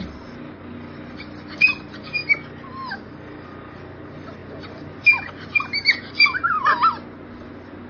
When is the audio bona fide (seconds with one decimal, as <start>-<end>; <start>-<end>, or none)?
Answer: 0.0-7.9